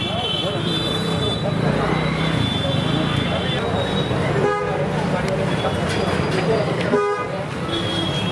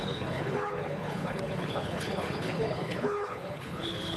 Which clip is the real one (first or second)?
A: first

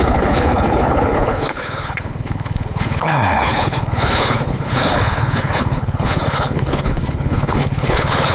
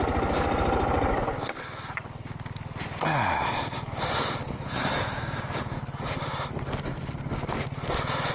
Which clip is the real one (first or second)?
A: second